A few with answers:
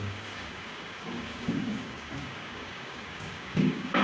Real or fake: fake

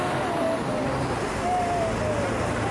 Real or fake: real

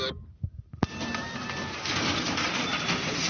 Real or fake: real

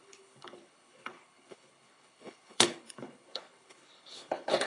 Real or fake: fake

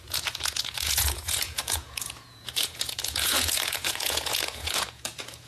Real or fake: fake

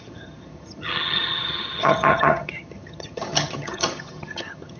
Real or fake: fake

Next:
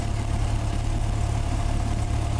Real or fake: real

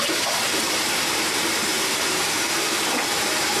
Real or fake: fake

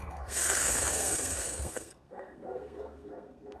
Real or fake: fake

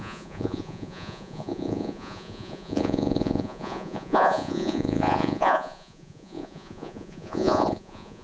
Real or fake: fake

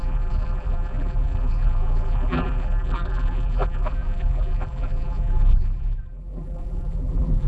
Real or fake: fake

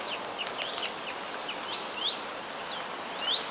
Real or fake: real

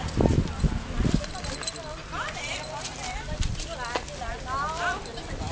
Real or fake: real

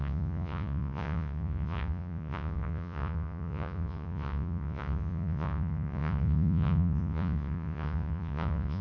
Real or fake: fake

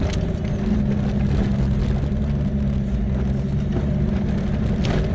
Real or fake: real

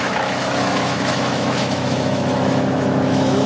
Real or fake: fake